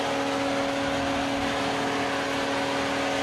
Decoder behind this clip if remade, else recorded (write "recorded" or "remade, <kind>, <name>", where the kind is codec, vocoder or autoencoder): recorded